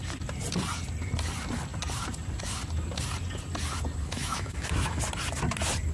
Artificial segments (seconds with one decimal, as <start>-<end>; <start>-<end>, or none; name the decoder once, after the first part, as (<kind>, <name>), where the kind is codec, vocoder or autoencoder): 4.0-5.0 (autoencoder, DAC-VAE)